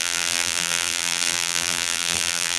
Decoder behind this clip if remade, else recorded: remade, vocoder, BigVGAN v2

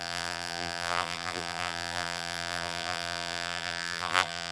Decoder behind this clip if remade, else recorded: remade, vocoder, BigVGAN v2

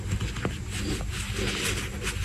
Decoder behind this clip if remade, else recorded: recorded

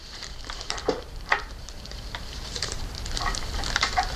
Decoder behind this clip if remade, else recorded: remade, vocoder, BigVGAN v2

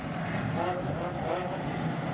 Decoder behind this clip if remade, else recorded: recorded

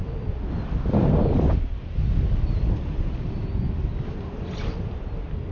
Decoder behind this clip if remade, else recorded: recorded